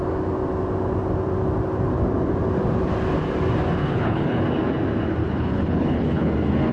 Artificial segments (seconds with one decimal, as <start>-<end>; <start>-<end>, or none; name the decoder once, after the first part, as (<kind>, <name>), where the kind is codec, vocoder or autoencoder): 3.8-4.4 (codec, HILCodec); 5.2-6.3